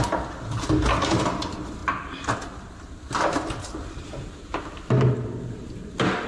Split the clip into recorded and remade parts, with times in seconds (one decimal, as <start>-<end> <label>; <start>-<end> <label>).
0.0-6.3 recorded